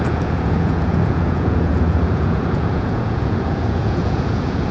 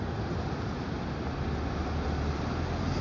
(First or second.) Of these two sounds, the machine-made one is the first